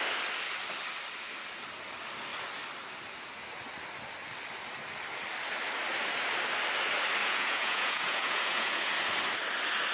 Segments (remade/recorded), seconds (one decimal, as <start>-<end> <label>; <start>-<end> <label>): 0.0-7.2 recorded; 7.2-8.9 remade; 8.9-9.9 recorded

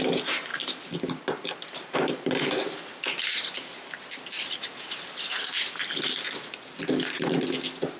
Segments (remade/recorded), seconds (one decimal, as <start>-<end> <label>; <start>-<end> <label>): 0.0-8.0 recorded

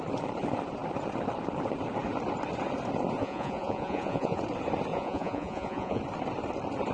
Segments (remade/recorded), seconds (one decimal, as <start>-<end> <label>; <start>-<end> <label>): 0.0-3.2 recorded; 3.2-4.4 remade; 4.4-4.9 recorded; 4.9-6.0 remade; 6.0-6.9 recorded

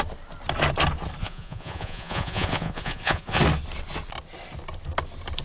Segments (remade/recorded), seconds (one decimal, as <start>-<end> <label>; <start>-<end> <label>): 0.0-1.2 recorded; 1.2-3.4 remade; 3.4-5.4 recorded

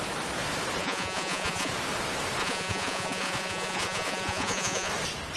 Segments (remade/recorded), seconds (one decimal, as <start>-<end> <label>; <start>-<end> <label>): 0.0-0.8 recorded; 0.8-1.7 remade; 1.7-2.4 recorded; 2.4-4.9 remade; 4.9-5.4 recorded

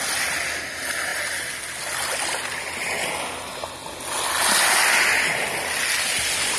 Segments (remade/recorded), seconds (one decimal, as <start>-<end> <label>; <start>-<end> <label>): 0.0-6.6 recorded